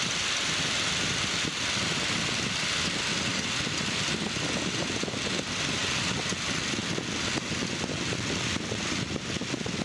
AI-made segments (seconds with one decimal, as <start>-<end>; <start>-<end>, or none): none